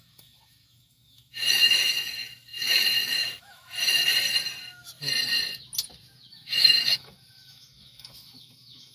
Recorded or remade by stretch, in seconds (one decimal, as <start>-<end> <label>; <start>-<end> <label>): 0.0-4.0 remade; 4.0-6.3 recorded; 6.3-8.9 remade